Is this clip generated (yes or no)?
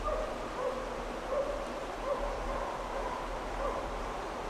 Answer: yes